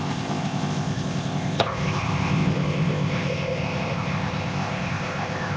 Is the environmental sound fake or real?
fake